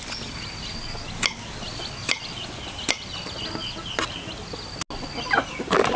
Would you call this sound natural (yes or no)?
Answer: yes